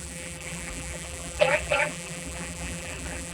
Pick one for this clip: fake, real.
fake